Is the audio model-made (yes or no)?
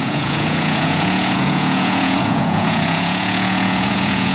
yes